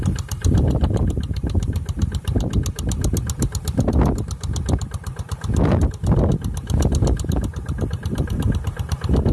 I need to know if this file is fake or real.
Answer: real